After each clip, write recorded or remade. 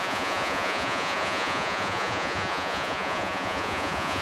remade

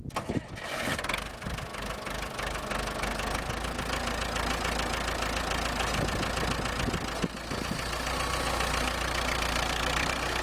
recorded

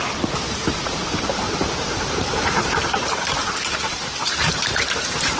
remade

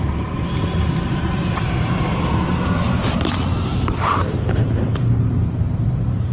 remade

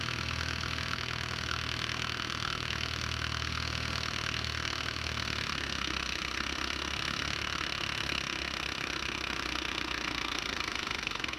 remade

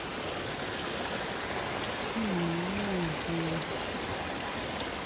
recorded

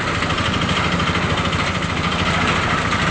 recorded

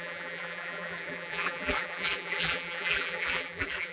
remade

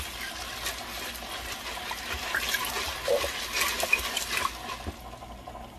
recorded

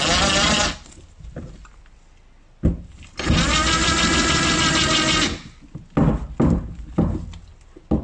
recorded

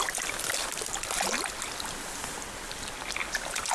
recorded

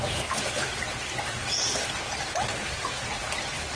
recorded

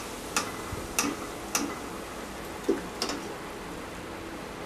recorded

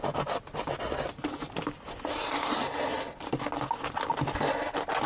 recorded